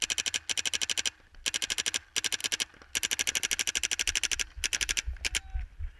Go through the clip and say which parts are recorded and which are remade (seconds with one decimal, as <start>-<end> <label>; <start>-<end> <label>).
0.0-6.0 recorded